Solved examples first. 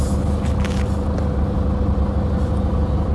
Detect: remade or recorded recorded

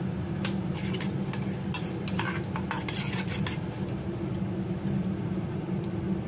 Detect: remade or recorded recorded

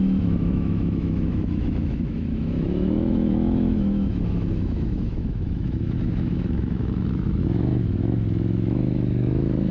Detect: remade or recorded remade